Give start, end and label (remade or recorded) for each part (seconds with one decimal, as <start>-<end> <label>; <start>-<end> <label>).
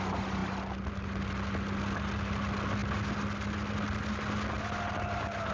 0.0-5.5 recorded